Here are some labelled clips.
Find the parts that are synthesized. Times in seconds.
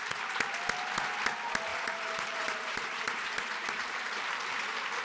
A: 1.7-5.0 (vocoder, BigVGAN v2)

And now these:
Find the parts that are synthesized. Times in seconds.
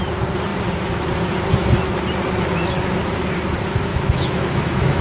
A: 3.9-5.0 (autoencoder, DAC-VAE)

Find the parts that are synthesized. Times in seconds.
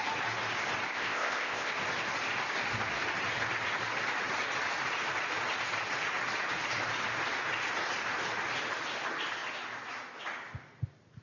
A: 0.9-1.7 (codec, ZipCodec)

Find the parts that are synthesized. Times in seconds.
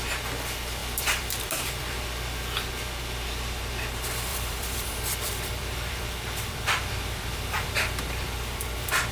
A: 0.8-2.0 (vocoder, BigVGAN v2); 4.3-9.1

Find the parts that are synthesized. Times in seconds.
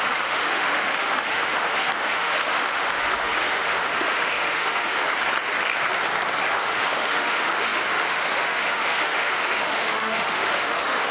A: 0.0-5.0 (autoencoder, DAC-VAE); 6.5-11.1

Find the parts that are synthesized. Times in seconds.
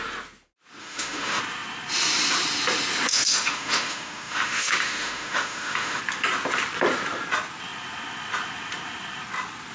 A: 0.8-1.4 (autoencoder, DAC-VAE); 3.1-6.0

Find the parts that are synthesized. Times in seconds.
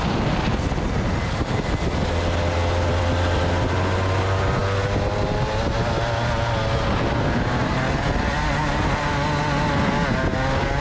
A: none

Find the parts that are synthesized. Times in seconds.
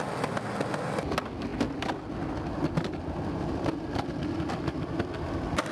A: none